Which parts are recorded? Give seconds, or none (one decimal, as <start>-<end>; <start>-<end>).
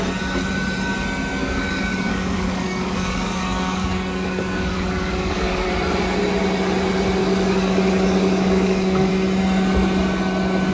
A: 0.0-1.4; 5.7-7.2; 9.1-10.7